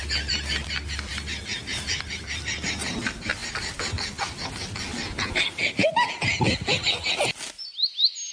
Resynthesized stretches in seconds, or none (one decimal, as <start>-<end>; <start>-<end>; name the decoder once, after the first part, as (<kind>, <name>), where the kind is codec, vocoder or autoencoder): none